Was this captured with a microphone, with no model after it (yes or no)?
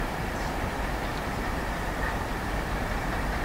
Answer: no